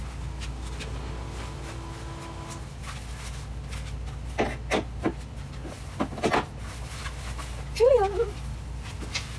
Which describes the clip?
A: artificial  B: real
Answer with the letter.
B